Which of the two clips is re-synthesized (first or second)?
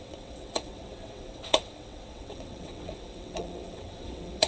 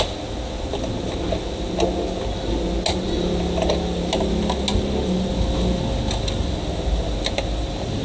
first